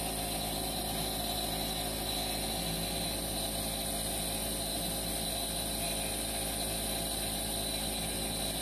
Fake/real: real